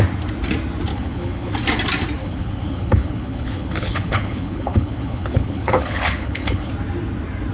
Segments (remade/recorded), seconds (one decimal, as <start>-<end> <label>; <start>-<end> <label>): 0.0-0.9 recorded; 0.9-1.5 remade; 1.5-2.2 recorded; 2.2-6.7 remade; 6.7-7.5 recorded